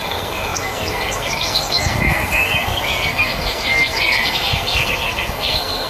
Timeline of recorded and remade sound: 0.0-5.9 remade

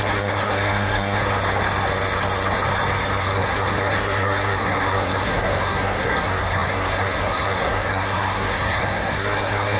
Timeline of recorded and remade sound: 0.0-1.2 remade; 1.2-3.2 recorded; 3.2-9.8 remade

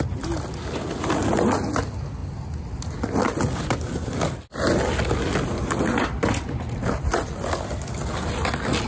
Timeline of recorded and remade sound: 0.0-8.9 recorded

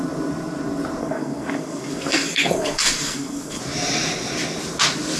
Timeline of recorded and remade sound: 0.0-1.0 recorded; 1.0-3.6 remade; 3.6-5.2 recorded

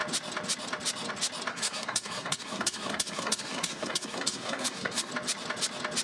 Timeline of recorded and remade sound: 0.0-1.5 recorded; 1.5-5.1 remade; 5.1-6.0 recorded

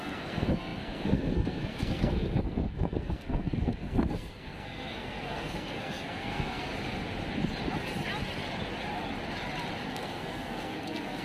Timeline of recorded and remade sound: 0.0-6.7 remade; 6.7-9.9 recorded; 9.9-11.2 remade

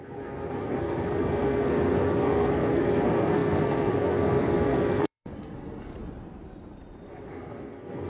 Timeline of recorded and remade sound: 0.0-5.9 remade; 5.9-7.3 recorded; 7.3-8.1 remade